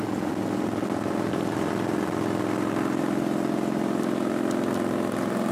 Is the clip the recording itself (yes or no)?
yes